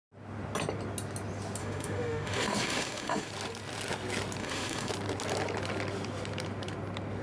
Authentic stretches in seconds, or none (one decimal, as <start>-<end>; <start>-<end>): 0.0-1.6; 3.3-4.4; 4.9-7.2